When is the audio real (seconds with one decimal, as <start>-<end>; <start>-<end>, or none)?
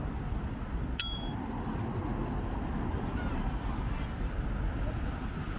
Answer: 0.0-5.6